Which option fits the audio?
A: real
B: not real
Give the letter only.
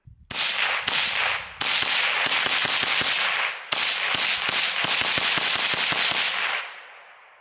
A